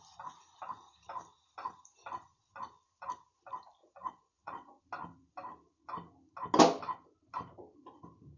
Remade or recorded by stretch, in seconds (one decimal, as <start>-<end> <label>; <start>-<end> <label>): 0.0-3.8 recorded; 3.8-4.8 remade; 4.8-8.4 recorded